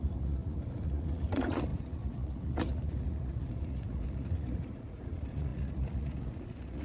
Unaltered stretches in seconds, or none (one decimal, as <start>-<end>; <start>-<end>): none